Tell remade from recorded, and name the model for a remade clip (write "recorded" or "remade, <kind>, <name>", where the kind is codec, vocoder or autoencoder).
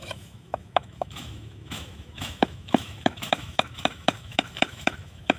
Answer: remade, autoencoder, DAC-VAE